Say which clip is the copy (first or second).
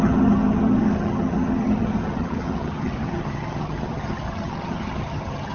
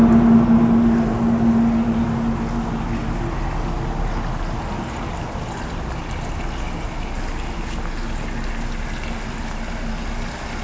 first